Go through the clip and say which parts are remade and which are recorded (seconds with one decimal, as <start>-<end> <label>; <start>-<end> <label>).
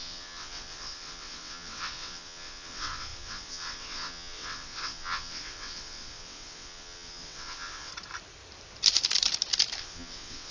0.0-7.9 remade; 7.9-9.8 recorded; 9.8-10.5 remade